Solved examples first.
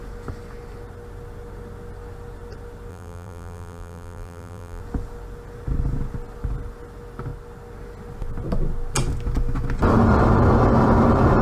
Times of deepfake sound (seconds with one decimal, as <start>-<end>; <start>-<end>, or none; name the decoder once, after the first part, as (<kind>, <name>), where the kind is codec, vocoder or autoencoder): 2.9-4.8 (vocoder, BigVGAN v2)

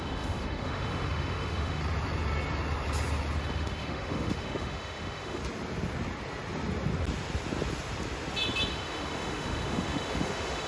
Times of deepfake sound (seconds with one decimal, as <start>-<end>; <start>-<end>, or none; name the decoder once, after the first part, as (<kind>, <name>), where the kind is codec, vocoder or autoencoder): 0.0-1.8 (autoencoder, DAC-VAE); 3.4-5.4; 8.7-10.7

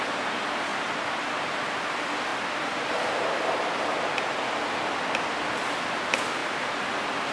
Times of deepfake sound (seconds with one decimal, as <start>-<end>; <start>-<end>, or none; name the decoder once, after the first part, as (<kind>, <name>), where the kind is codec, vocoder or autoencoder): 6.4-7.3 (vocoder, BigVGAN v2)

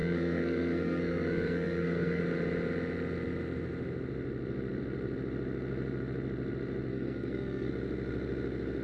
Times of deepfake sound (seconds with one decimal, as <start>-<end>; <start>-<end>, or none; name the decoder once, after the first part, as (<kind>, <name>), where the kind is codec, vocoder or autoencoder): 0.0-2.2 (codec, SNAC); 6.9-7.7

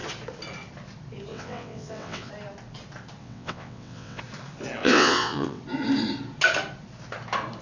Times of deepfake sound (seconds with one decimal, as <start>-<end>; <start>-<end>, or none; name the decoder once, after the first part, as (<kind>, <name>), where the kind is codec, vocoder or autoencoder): 1.3-2.3 (vocoder, WaveNeXt); 3.2-4.2; 4.8-5.6

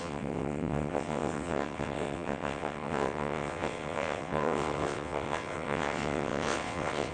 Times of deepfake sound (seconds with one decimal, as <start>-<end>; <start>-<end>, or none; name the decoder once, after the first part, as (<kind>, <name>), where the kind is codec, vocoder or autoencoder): 0.0-7.1 (vocoder, WaveNeXt)

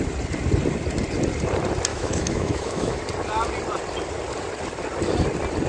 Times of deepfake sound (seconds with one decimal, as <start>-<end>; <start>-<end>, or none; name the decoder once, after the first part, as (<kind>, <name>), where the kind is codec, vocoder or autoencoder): 1.9-3.0 (autoencoder, DAC-VAE)

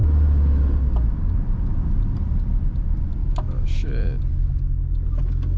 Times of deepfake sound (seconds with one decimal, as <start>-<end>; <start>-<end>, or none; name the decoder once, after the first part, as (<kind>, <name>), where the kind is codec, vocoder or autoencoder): 3.2-4.2 (autoencoder, DAC-VAE)